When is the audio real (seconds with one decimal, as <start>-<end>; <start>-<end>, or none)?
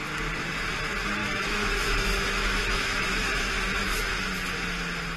0.0-1.2; 4.3-5.2